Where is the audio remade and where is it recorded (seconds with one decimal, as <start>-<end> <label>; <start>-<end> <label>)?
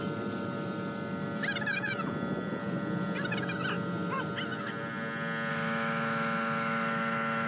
0.0-5.5 recorded; 5.5-7.5 remade